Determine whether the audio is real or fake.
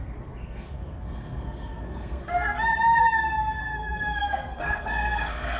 fake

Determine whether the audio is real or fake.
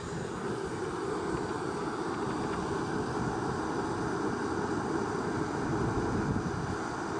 real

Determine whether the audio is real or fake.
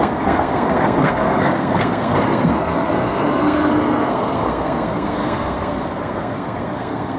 fake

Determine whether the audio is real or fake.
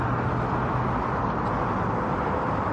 real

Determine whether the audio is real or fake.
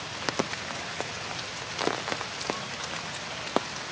real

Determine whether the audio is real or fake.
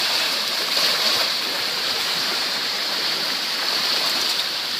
fake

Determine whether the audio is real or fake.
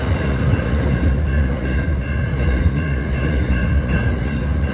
fake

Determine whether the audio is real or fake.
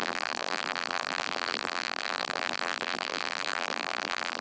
fake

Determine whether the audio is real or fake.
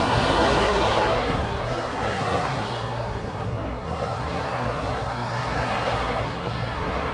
fake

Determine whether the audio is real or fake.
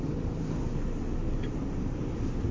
real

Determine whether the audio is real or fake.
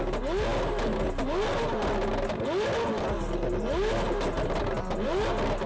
real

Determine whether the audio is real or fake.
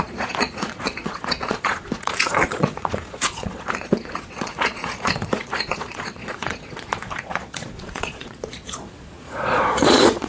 fake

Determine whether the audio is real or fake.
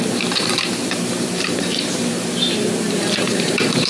fake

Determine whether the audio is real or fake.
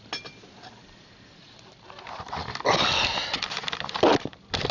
real